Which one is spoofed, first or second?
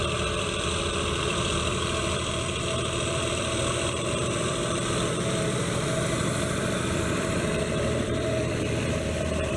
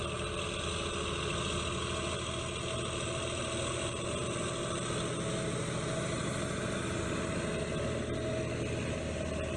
first